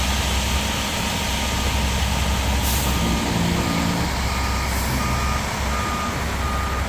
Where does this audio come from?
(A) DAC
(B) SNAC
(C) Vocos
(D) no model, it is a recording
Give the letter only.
D